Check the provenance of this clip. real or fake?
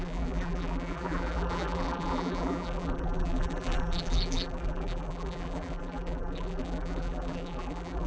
fake